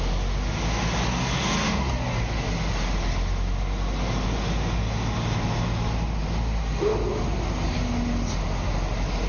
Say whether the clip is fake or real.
real